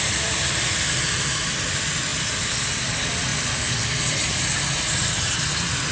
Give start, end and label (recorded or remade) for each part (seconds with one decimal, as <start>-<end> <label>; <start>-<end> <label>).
0.0-5.9 recorded